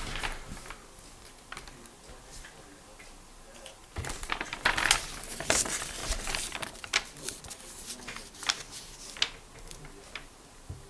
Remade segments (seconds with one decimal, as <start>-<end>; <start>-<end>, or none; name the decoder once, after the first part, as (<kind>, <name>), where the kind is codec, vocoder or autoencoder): 3.8-4.6 (vocoder, BigVGAN v2); 6.0-7.5